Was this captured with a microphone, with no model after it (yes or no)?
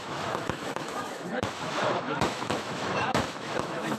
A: no